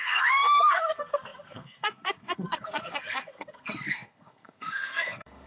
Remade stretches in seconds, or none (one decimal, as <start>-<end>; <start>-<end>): 0.0-5.5